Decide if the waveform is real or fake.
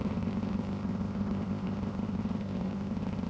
fake